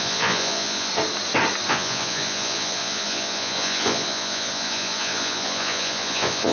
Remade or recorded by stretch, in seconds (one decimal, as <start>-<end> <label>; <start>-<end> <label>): 0.0-0.9 remade; 0.9-1.7 recorded; 1.7-6.5 remade

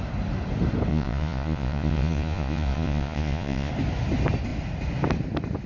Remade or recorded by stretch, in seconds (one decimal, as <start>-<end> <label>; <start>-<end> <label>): 0.0-0.9 recorded; 0.9-3.7 remade; 3.7-5.7 recorded

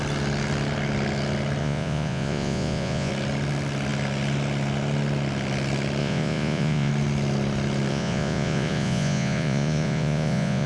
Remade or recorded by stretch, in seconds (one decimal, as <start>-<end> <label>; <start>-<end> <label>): 0.0-1.6 recorded; 1.6-3.1 remade; 3.1-6.0 recorded; 6.0-6.9 remade; 6.9-7.9 recorded; 7.9-10.7 remade

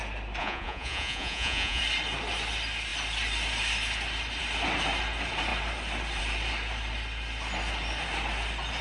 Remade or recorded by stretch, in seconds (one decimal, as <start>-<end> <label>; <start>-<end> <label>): 0.0-0.4 recorded; 0.4-1.8 remade; 1.8-8.8 recorded

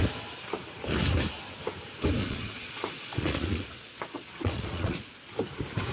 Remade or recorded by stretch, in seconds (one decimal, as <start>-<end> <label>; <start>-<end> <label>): 0.0-2.2 recorded; 2.2-5.1 remade; 5.1-5.9 recorded

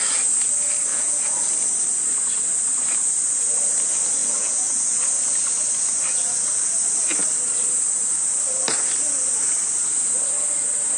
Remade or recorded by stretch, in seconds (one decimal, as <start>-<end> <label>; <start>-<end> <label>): 0.0-0.9 recorded; 0.9-1.5 remade; 1.5-4.2 recorded; 4.2-5.0 remade; 5.0-11.0 recorded

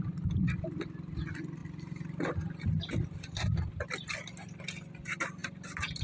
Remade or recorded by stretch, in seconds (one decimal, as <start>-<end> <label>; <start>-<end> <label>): 0.0-6.0 recorded

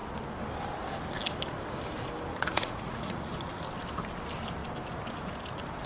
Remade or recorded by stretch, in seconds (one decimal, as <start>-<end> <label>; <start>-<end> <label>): 0.0-2.3 recorded; 2.3-3.3 remade; 3.3-5.9 recorded